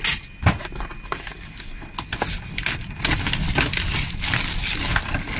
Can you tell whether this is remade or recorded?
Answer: recorded